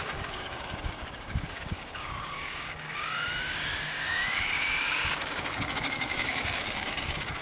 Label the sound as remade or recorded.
remade